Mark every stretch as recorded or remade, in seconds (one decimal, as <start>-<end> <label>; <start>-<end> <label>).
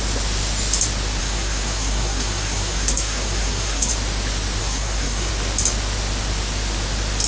0.0-1.2 recorded; 1.2-3.9 remade; 3.9-4.6 recorded; 4.6-5.3 remade; 5.3-7.3 recorded